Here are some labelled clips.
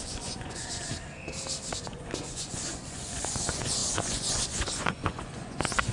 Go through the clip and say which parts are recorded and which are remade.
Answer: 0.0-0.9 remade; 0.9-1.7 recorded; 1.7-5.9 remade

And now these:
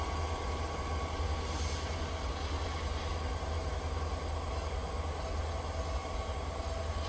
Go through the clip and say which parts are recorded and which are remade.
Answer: 0.0-7.1 recorded

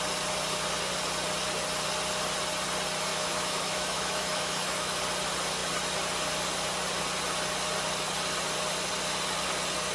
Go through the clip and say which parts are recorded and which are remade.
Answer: 0.0-3.1 recorded; 3.1-5.0 remade; 5.0-9.9 recorded

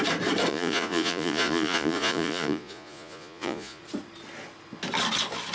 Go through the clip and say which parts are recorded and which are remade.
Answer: 0.0-0.5 recorded; 0.5-3.8 remade; 3.8-5.5 recorded

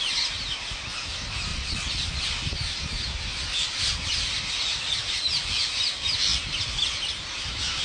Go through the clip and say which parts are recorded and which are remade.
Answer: 0.0-1.5 recorded; 1.5-2.2 remade; 2.2-7.8 recorded